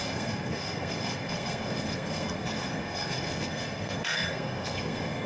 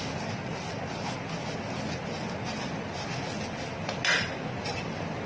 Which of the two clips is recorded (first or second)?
second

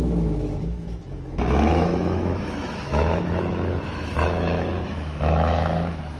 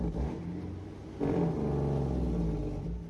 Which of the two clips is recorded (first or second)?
second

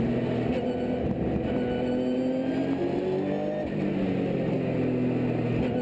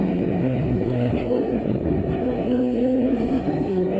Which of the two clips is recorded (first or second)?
first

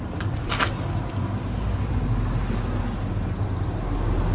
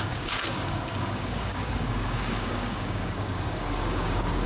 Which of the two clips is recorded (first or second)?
first